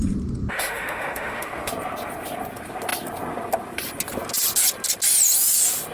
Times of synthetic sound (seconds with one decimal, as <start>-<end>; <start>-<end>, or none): 0.5-1.7